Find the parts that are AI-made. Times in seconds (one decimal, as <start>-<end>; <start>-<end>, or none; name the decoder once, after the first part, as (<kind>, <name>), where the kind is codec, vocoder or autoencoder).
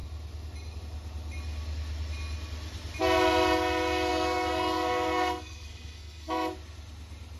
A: 4.1-6.5 (codec, SNAC)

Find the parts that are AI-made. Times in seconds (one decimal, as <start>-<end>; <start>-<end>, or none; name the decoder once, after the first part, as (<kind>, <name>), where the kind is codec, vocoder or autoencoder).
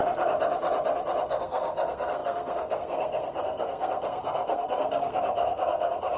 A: 1.2-6.2 (codec, SNAC)